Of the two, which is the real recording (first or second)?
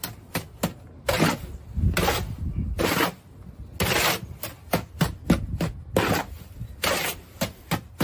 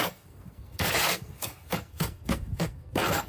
first